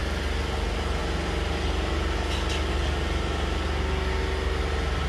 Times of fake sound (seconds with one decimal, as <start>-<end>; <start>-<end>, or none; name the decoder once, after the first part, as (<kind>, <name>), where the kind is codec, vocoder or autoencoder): none